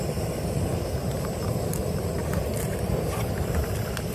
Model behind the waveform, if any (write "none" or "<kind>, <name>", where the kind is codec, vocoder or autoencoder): vocoder, BigVGAN v2